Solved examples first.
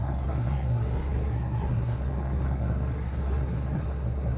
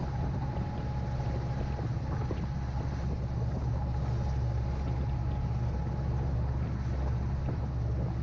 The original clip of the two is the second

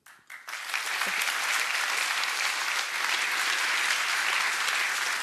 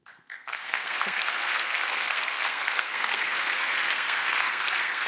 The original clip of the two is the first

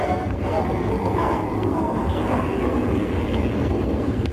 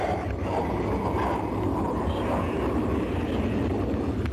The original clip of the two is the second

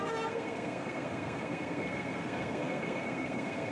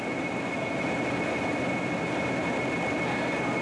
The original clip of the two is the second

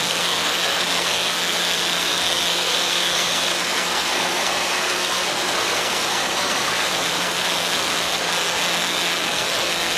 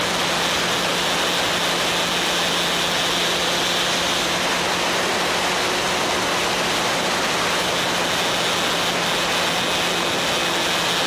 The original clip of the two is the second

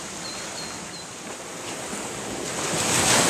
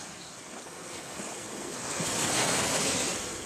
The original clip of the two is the first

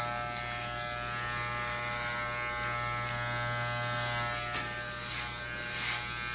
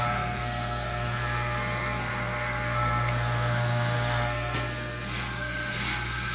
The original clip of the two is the first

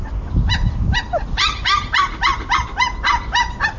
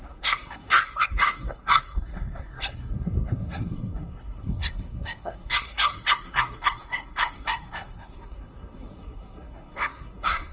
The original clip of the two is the first